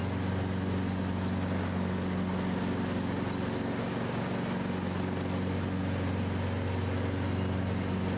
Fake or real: real